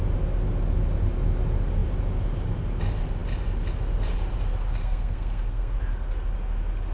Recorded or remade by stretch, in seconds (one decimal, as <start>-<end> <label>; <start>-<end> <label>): 0.0-4.8 recorded; 4.8-5.8 remade; 5.8-6.9 recorded